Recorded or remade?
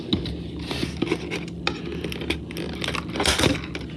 recorded